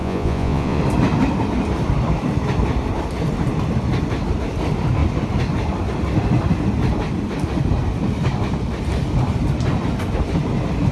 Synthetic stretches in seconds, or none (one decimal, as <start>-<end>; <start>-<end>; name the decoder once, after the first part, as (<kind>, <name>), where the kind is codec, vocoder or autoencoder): 0.0-0.8 (vocoder, Vocos)